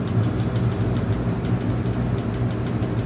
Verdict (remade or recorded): recorded